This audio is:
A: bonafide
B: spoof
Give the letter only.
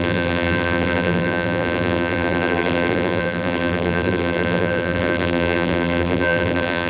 B